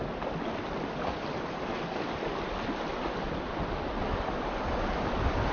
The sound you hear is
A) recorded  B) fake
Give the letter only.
A